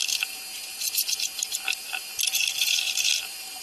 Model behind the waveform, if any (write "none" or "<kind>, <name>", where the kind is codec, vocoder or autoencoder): none